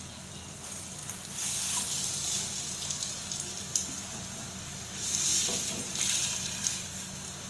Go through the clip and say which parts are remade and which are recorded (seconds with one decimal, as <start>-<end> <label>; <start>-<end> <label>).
0.0-5.3 remade; 5.3-5.8 recorded; 5.8-7.5 remade